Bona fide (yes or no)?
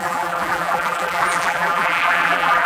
no